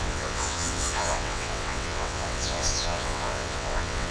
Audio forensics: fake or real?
fake